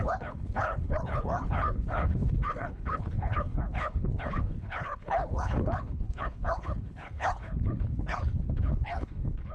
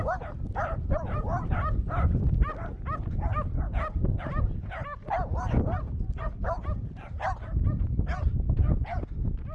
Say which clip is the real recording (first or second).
second